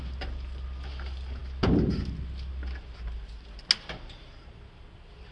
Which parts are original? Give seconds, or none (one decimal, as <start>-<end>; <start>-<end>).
0.0-5.3